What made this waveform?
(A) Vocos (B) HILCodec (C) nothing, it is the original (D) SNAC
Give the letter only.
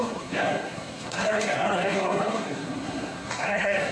D